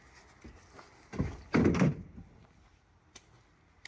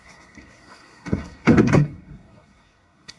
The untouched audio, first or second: first